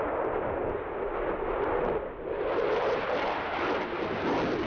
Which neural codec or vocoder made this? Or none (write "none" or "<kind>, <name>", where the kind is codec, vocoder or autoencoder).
none